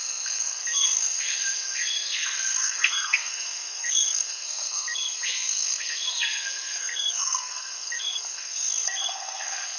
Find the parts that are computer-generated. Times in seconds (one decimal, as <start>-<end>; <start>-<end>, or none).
0.0-9.8